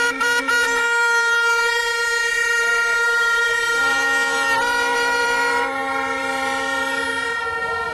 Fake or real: fake